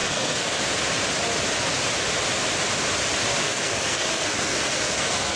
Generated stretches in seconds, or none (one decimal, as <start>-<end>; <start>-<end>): 0.0-0.6; 3.4-5.4